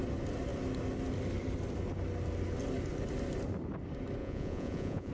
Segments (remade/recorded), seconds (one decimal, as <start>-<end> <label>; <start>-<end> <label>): 0.0-4.2 recorded; 4.2-5.1 remade